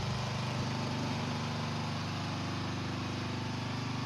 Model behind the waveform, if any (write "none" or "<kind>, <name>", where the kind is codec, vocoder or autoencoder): none